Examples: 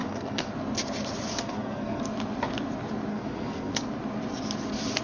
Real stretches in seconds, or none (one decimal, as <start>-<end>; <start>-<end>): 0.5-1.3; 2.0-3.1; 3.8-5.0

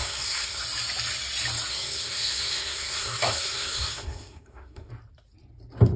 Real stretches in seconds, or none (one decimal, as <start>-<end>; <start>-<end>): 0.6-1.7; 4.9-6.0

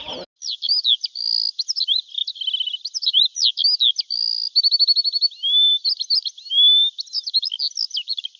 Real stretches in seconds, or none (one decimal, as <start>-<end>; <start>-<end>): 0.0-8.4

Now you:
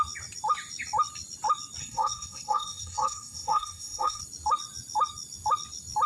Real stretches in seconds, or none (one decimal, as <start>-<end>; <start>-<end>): 0.0-1.8; 4.2-6.1

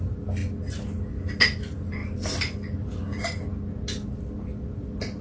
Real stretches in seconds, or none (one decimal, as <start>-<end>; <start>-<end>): 0.0-5.2

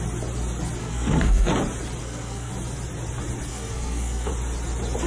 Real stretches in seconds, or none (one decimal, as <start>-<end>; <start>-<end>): 0.0-0.8; 1.5-2.0; 2.5-3.5; 4.3-5.1

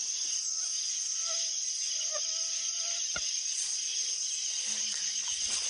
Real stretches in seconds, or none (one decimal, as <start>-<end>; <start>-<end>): 0.0-5.7